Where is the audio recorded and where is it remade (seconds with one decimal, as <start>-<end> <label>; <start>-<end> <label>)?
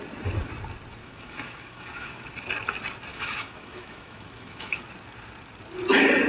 0.0-1.0 recorded; 1.0-2.3 remade; 2.3-3.1 recorded; 3.1-4.8 remade; 4.8-6.3 recorded